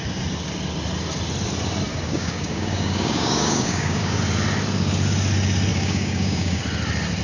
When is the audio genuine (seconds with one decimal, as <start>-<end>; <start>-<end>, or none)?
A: 0.0-1.9; 4.2-5.7; 6.6-7.2